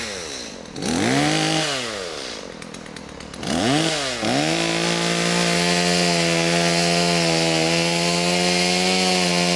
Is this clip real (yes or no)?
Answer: yes